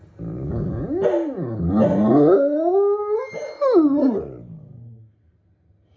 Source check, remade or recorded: recorded